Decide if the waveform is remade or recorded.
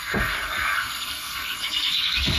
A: remade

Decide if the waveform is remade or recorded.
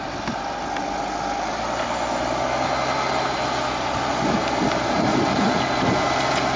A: recorded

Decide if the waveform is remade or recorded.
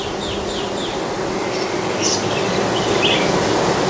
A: recorded